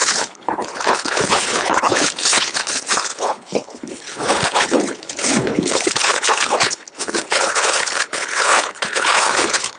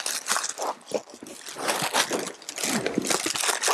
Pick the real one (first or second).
second